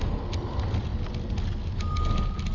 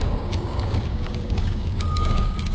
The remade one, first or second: second